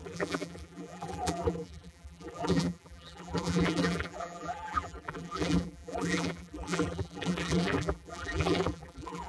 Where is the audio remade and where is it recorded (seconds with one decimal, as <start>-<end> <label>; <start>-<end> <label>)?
0.0-9.3 remade